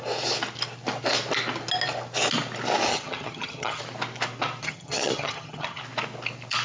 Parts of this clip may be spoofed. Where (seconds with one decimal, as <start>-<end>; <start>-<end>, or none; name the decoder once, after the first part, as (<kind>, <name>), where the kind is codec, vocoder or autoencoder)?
2.9-3.8 (vocoder, HiFi-GAN); 4.6-5.8